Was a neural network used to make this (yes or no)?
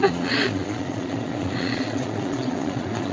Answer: yes